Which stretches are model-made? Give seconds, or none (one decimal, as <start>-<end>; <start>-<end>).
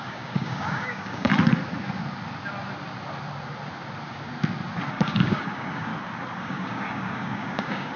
0.0-1.3; 4.9-5.9; 6.4-8.0